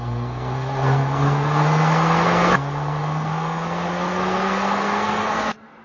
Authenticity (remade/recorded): remade